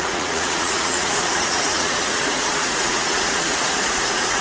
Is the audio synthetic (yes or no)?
yes